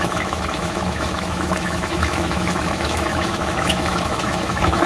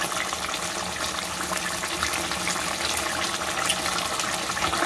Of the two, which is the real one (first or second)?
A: second